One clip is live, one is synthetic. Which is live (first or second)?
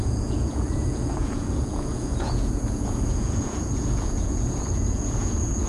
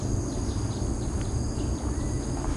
second